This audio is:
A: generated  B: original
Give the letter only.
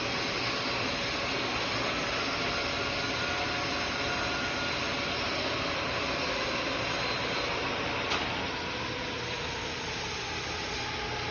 B